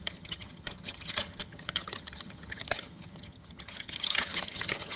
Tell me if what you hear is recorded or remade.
remade